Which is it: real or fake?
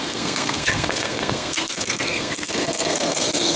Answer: fake